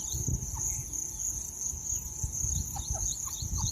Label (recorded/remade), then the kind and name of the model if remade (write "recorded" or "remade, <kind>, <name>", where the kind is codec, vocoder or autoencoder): remade, vocoder, Vocos